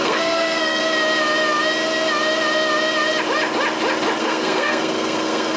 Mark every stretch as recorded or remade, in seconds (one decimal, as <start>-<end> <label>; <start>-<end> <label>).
0.0-0.8 remade; 0.8-4.2 recorded; 4.2-5.6 remade